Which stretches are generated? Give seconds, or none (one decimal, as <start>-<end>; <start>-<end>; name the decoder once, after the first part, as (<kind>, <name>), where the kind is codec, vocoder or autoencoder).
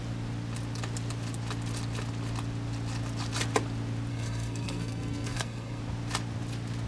4.1-5.8 (codec, SNAC)